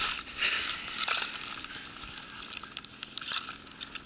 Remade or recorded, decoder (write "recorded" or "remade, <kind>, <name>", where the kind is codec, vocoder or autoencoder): recorded